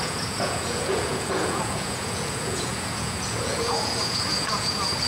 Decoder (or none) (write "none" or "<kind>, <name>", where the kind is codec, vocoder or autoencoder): vocoder, Vocos